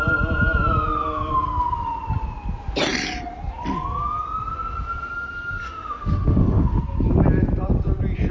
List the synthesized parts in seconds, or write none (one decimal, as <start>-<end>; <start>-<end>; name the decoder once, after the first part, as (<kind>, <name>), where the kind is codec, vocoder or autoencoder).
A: 5.6-6.8 (autoencoder, DAC-VAE)